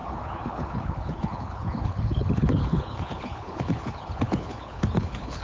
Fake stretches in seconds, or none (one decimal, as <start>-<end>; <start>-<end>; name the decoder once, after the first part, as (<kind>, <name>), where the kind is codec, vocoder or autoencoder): 0.0-5.4 (codec, HILCodec)